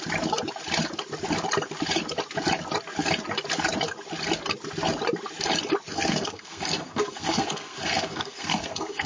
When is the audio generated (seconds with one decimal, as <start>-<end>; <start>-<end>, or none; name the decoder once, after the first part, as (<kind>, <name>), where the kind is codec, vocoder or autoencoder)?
5.9-9.1 (codec, SNAC)